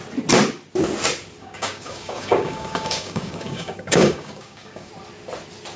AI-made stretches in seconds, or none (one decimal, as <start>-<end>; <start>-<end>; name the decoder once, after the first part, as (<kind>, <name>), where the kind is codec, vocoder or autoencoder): 1.4-4.9 (codec, DAC)